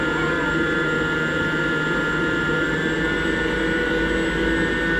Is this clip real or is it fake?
real